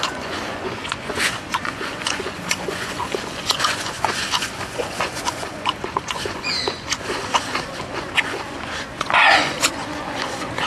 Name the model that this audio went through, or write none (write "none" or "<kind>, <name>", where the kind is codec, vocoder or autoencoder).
vocoder, Vocos